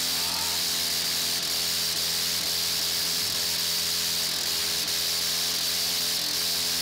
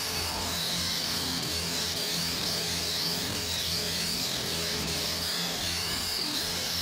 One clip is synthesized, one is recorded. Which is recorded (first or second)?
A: first